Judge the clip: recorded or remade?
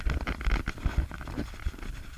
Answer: recorded